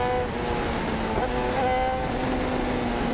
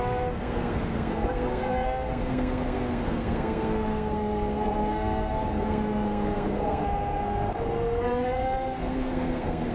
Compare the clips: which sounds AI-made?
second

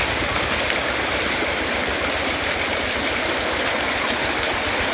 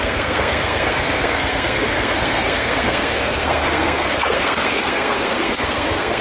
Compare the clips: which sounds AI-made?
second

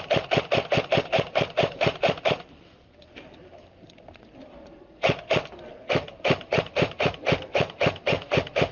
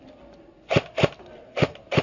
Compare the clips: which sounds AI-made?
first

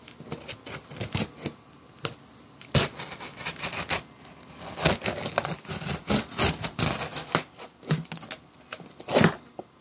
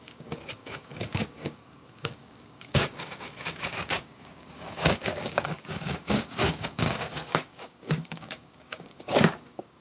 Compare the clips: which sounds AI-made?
second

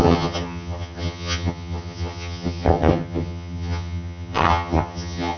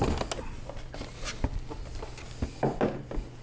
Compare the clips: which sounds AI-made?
first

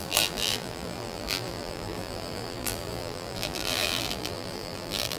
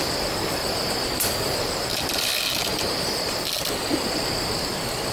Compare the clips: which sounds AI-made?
first